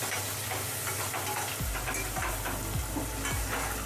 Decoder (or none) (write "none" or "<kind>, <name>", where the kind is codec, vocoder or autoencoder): none